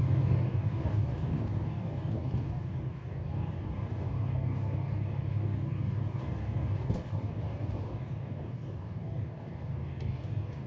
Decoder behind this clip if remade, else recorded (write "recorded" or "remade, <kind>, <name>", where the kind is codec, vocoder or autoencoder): remade, codec, DAC